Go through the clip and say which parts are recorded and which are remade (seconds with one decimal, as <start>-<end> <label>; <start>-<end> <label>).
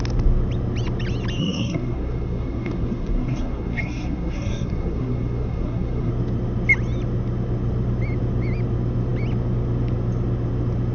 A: 0.0-1.4 recorded; 1.4-6.1 remade; 6.1-10.9 recorded